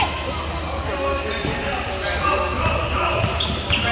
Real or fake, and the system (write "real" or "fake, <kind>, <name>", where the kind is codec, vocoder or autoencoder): real